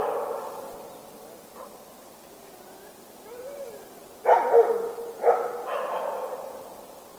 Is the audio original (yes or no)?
yes